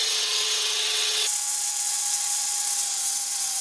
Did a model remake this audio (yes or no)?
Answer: yes